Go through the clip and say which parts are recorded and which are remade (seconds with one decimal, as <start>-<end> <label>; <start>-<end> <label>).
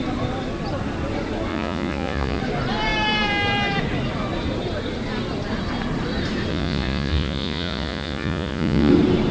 0.0-1.5 recorded; 1.5-2.4 remade; 2.4-6.5 recorded; 6.5-8.9 remade; 8.9-9.3 recorded